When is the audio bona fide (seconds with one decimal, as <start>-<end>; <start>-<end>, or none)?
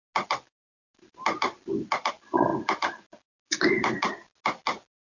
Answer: 0.0-5.1